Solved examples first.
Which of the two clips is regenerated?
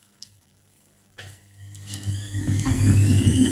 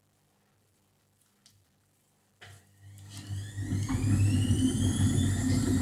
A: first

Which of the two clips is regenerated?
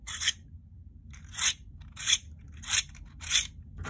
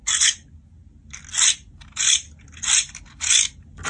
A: first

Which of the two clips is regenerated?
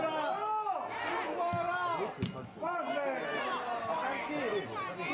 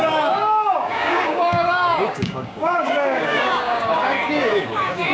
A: second